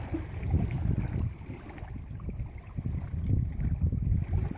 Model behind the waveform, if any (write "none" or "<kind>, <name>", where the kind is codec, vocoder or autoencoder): none